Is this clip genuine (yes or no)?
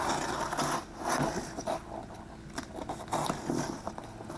yes